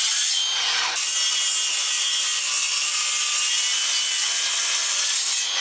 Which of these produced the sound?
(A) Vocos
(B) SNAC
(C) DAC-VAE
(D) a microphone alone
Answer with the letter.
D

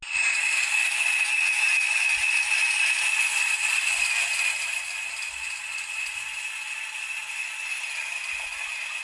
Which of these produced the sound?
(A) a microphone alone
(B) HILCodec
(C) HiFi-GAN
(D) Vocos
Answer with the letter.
A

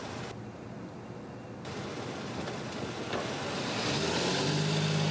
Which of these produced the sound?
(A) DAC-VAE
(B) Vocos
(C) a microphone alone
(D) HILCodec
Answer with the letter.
C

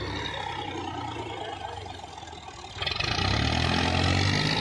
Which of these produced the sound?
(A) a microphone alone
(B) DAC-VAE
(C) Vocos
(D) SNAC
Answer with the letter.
A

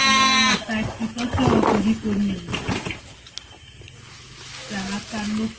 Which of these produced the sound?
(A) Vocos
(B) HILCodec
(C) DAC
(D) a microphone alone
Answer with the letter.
D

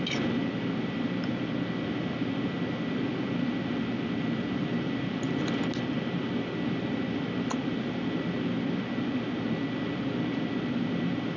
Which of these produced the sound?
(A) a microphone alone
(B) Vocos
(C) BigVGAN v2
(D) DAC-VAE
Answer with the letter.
A